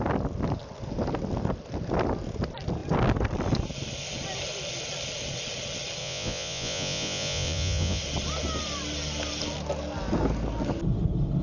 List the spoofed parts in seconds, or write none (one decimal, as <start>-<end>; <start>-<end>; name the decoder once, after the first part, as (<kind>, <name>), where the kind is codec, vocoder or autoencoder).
6.0-8.0 (vocoder, Vocos)